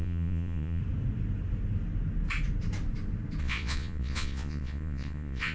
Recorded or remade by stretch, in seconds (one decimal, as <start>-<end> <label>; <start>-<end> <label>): 0.0-0.8 remade; 0.8-3.4 recorded; 3.4-5.5 remade